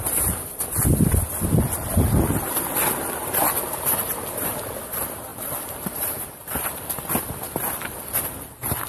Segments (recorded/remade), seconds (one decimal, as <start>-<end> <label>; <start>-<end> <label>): 0.0-5.3 recorded; 5.3-7.1 remade; 7.1-8.9 recorded